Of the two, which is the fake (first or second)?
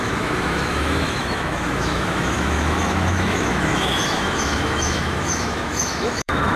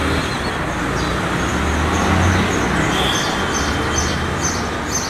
first